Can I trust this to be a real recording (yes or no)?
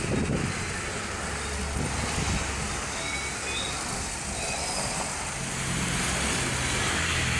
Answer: yes